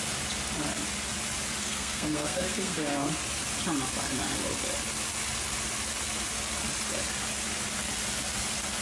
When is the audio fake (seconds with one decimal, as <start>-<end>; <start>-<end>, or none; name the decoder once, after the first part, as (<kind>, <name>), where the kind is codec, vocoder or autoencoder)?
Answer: 1.6-3.1 (codec, SNAC)